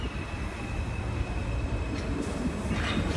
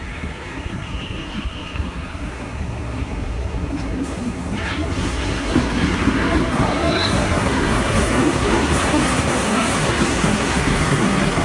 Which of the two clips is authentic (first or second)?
first